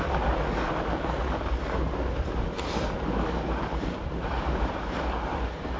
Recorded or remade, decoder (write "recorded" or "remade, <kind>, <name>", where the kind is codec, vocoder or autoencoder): recorded